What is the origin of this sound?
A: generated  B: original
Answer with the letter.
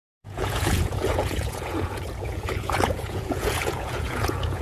A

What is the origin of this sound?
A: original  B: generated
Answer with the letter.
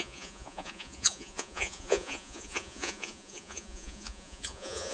B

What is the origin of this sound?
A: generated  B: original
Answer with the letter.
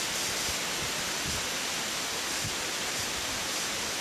B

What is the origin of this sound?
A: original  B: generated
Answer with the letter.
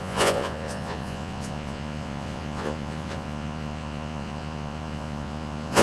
B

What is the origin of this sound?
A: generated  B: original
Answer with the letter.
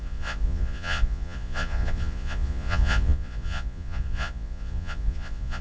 A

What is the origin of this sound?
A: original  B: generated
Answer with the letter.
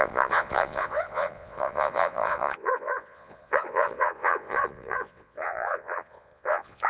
B